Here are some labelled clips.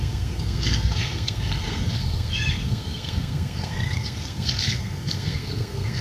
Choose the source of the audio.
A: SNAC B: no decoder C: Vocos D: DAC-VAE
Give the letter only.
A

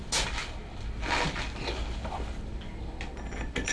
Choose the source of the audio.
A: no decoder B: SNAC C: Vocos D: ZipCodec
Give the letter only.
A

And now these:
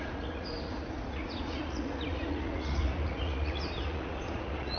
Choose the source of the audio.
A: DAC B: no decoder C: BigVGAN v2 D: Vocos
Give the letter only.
D